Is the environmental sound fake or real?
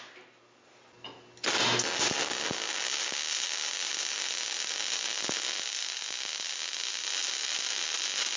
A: real